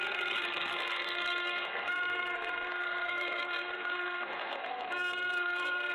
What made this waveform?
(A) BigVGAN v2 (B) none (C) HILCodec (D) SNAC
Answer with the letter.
D